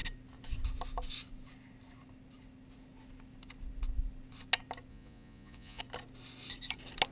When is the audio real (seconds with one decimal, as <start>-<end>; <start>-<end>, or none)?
0.0-4.9; 5.8-7.1